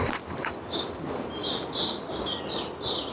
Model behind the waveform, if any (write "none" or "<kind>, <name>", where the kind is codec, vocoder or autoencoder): none